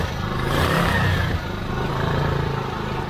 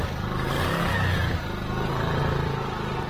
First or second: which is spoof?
first